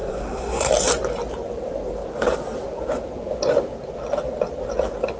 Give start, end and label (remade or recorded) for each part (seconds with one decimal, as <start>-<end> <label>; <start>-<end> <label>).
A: 0.0-0.7 remade; 0.7-5.2 recorded